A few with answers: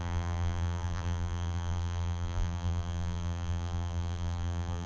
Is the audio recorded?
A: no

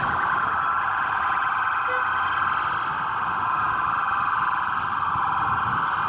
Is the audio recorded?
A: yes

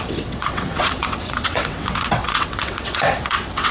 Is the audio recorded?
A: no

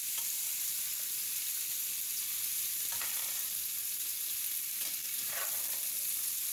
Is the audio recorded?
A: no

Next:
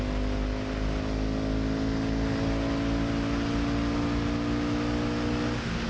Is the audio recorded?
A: yes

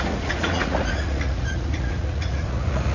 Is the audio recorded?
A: no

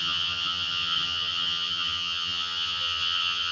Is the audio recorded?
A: no